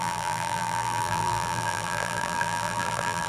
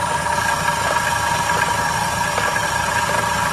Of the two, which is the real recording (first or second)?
second